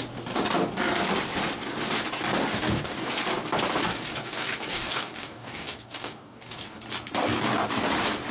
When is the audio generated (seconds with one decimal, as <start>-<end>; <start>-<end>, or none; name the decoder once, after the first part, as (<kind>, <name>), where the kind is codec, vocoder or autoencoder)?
2.5-3.1 (codec, DAC); 3.9-6.8